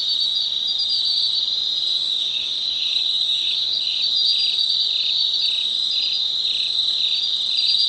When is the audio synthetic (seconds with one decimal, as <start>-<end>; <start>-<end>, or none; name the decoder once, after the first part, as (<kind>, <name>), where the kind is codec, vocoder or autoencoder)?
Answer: 1.9-4.0 (codec, DAC)